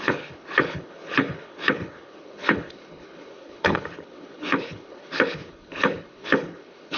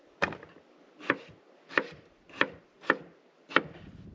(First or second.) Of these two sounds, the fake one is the first